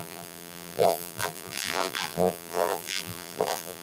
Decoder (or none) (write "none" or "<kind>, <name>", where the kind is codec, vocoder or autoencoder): vocoder, BigVGAN v2